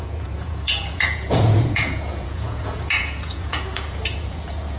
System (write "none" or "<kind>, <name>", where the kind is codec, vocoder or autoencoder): vocoder, Vocos